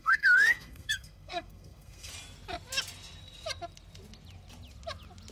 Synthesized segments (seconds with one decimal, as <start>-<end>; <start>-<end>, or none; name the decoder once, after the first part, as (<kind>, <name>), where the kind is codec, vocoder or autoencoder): 0.0-2.1 (codec, SNAC)

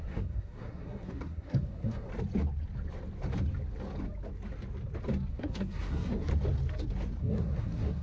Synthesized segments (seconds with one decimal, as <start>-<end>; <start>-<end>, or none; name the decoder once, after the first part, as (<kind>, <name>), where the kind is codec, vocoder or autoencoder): 0.0-2.1 (codec, SNAC); 5.3-6.3; 7.2-8.0

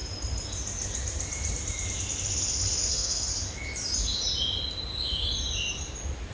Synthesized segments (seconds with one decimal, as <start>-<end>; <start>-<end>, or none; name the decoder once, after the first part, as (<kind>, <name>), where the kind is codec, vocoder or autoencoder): 2.9-3.3 (codec, SNAC)

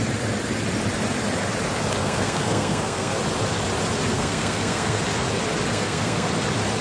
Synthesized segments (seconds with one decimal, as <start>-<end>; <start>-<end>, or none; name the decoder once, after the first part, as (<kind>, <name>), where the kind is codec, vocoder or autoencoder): 2.0-3.2 (codec, SNAC); 4.1-5.0; 5.7-6.3

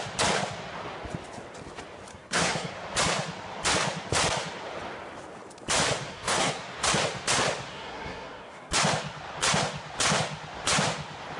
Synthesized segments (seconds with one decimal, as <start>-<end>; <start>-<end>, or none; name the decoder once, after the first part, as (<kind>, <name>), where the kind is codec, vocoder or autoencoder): 2.1-2.7 (codec, SNAC); 6.1-6.6; 7.7-8.7

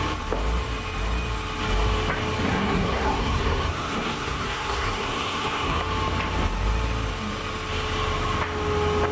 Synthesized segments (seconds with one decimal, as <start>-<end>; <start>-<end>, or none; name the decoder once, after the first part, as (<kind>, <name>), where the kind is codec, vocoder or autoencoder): 2.5-5.8 (codec, SNAC)

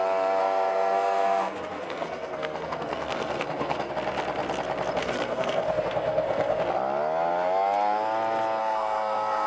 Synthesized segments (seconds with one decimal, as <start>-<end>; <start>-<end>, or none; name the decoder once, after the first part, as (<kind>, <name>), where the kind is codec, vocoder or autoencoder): 0.4-3.9 (codec, SNAC); 5.0-6.6; 8.6-9.5